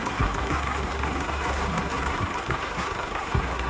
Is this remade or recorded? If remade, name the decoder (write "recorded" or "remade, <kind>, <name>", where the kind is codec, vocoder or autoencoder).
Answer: remade, codec, SNAC